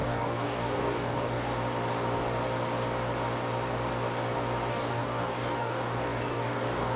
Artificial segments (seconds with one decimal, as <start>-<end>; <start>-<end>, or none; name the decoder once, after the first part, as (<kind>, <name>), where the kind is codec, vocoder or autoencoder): 0.0-1.5 (codec, DAC); 4.7-7.0